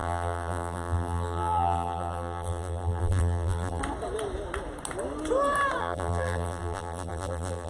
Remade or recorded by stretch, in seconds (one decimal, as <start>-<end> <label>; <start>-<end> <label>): 0.0-3.8 remade; 3.8-5.8 recorded; 5.8-7.7 remade